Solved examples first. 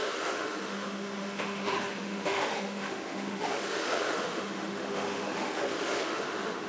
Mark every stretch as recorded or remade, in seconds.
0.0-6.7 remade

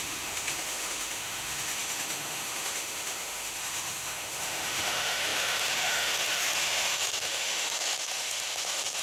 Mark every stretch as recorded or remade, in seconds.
0.0-9.0 remade